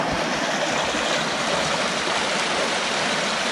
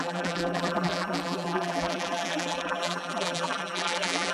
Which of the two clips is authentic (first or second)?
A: first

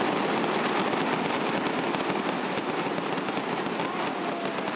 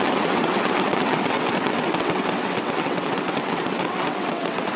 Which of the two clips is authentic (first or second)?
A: first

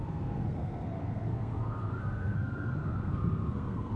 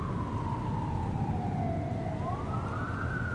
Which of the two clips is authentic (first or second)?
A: second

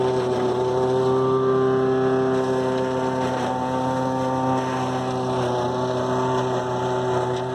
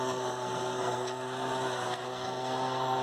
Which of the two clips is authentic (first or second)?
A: first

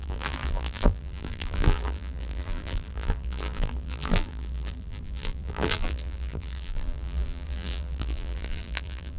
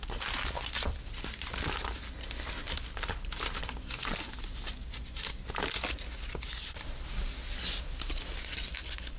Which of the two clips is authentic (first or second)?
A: second